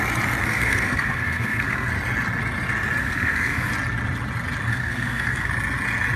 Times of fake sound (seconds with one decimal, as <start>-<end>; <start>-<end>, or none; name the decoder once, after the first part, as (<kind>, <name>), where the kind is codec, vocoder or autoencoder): 0.4-1.9 (codec, SNAC); 3.0-3.7; 4.7-5.5